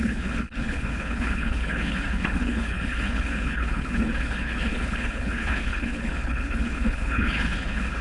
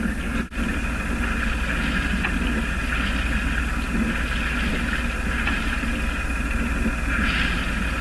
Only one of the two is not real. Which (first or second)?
first